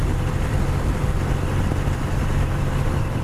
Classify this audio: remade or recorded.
remade